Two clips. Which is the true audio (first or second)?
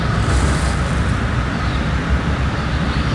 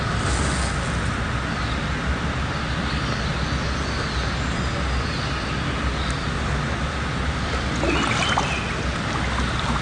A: second